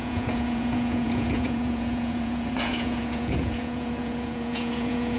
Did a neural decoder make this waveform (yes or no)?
yes